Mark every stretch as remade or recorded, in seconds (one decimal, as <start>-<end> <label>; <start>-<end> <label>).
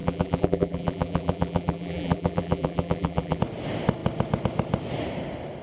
0.0-3.4 remade; 3.4-5.6 recorded